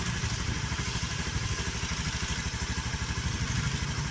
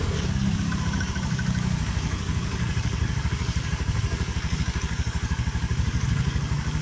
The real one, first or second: first